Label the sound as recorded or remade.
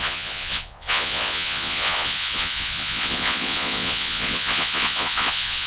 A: remade